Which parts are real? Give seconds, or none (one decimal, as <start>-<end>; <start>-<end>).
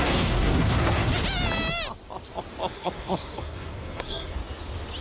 1.1-2.7; 4.4-5.0